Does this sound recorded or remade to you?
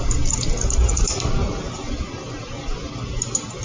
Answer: recorded